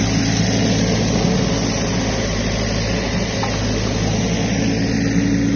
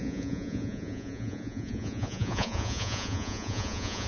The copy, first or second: second